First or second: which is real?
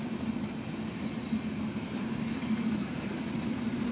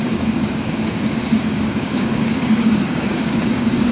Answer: first